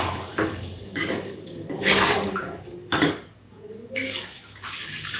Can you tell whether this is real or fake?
fake